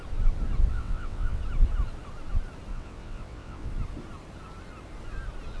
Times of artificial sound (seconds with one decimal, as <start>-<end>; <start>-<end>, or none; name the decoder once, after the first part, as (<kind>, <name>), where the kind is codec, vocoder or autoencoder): 0.7-1.4 (vocoder, WaveNeXt); 2.7-3.7